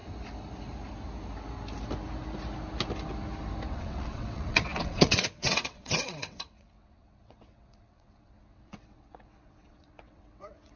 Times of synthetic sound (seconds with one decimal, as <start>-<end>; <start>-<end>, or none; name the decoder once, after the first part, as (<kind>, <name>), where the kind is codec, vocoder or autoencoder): 3.7-10.8 (vocoder, WaveNeXt)